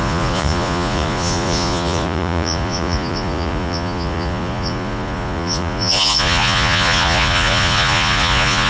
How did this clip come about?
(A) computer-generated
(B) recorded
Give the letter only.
A